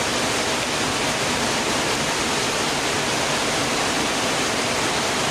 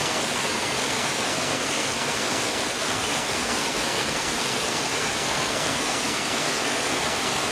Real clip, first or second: first